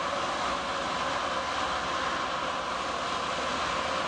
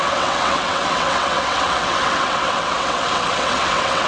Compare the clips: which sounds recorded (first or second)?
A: first